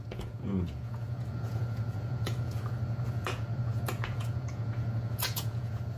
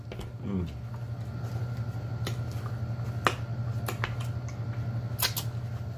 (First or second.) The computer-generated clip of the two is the first